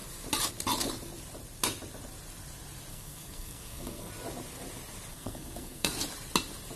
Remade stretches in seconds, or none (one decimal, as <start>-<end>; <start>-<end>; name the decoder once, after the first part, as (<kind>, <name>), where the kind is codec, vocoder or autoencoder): 2.9-4.1 (codec, SNAC); 5.1-5.9